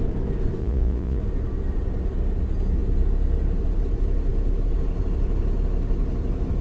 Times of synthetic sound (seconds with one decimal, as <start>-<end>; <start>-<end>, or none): 0.6-1.2